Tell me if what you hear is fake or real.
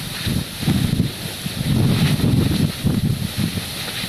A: real